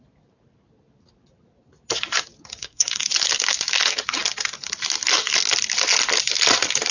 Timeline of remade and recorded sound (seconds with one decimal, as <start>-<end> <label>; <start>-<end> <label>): 0.0-2.6 recorded; 2.6-3.1 remade; 3.1-6.9 recorded